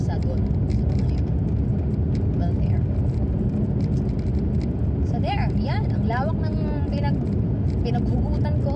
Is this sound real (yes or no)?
yes